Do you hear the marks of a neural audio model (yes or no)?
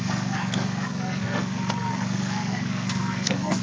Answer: yes